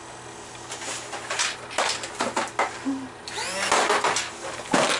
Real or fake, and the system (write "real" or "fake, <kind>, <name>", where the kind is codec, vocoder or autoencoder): real